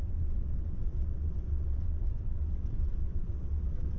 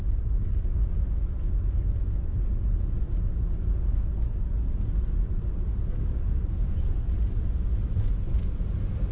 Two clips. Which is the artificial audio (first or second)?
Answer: first